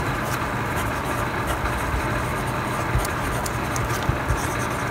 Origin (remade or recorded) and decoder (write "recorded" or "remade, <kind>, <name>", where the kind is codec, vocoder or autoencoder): recorded